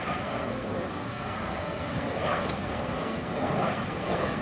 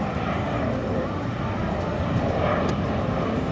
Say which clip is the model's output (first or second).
first